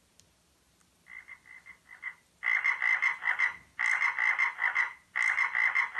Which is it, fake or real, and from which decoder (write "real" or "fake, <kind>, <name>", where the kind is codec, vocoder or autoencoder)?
real